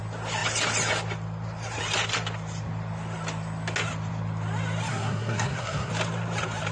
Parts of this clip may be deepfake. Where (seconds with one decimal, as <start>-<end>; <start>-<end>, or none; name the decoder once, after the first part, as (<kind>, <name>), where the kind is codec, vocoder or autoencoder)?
4.9-5.9 (codec, SNAC)